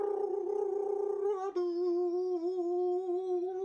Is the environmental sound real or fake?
real